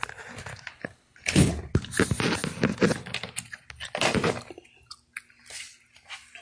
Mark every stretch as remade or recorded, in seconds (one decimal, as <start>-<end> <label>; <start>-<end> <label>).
0.0-0.7 recorded; 0.7-1.5 remade; 1.5-6.4 recorded